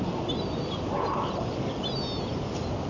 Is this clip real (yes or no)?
yes